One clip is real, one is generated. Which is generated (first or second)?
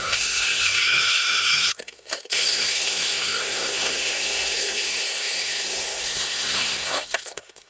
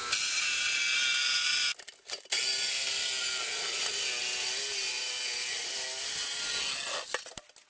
first